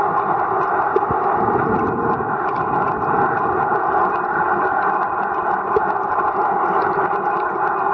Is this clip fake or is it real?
real